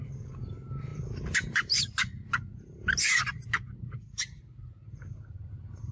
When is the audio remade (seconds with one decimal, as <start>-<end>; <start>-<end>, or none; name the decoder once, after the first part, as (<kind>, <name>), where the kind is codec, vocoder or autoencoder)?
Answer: none